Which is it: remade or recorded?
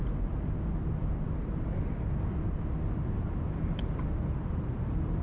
recorded